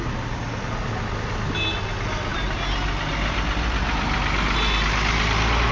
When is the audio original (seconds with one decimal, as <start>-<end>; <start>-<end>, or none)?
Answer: 0.0-5.7